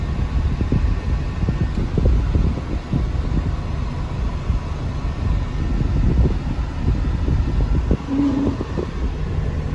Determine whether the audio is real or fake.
real